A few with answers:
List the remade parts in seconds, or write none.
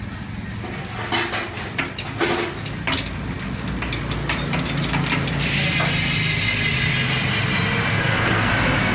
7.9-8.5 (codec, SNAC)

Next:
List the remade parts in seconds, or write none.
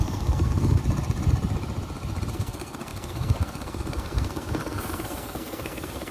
0.0-0.8 (codec, SNAC); 2.3-6.1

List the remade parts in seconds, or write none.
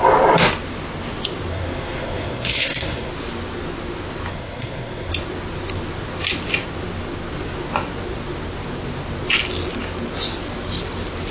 1.5-3.1 (codec, SNAC); 4.3-5.1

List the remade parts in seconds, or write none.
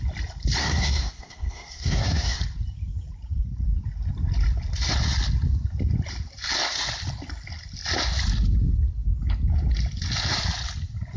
0.6-2.4 (codec, SNAC)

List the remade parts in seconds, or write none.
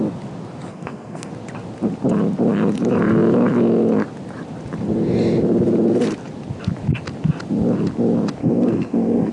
0.7-1.3 (codec, SNAC); 8.4-9.3